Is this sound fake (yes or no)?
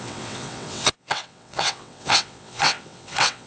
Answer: yes